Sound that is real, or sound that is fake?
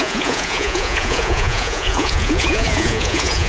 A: fake